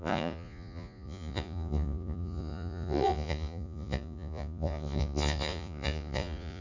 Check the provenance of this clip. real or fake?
fake